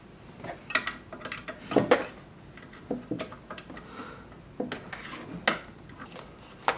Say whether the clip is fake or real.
real